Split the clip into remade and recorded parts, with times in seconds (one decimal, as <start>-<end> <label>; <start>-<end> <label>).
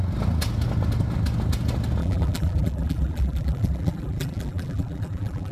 0.0-2.0 recorded; 2.0-5.5 remade